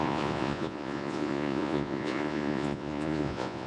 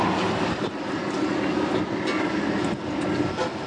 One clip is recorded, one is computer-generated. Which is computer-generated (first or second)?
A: first